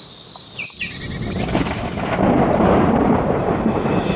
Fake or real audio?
real